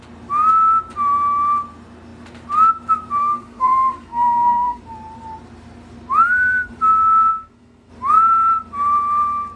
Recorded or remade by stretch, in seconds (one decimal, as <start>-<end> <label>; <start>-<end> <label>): 0.0-3.2 recorded; 3.2-4.8 remade; 4.8-7.3 recorded; 7.3-7.9 remade; 7.9-9.6 recorded